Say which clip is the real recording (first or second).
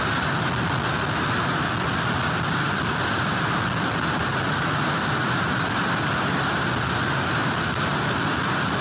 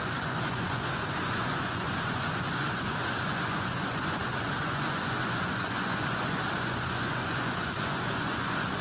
first